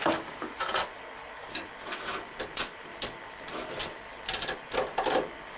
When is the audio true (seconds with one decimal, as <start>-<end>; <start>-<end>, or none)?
0.0-5.6